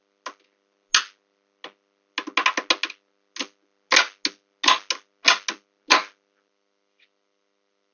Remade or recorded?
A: recorded